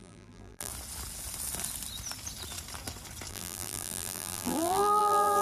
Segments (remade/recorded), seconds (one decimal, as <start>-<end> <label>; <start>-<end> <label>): 0.0-0.7 remade; 0.7-3.3 recorded; 3.3-5.4 remade